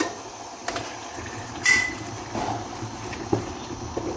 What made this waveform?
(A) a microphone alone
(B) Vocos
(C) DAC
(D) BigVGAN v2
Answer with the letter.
D